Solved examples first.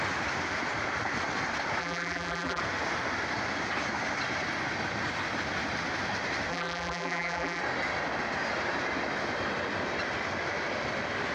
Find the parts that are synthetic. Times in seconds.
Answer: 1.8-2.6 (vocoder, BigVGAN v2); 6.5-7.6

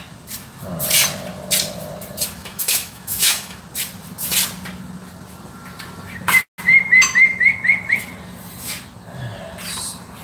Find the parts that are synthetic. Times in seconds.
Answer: 2.4-3.6 (autoencoder, DAC-VAE)

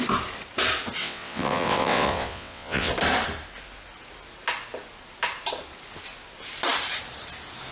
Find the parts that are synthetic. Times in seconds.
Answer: 1.0-2.9 (vocoder, WaveNeXt)

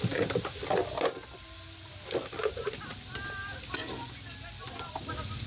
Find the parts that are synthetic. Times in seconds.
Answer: none